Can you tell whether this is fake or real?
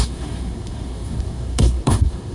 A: fake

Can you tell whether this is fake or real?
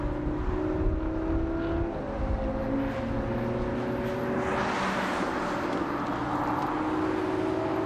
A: real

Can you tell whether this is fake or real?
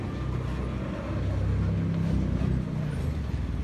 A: real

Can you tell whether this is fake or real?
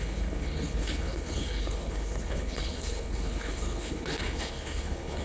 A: fake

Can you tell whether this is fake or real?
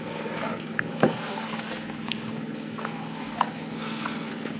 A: fake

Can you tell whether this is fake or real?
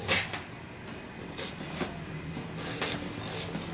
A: real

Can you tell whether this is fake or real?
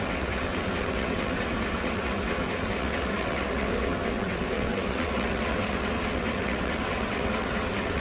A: fake